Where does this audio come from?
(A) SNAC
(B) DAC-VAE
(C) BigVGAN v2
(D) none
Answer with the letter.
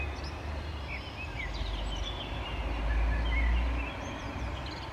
D